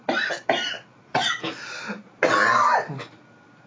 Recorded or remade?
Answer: recorded